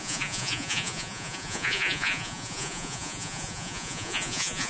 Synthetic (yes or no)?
yes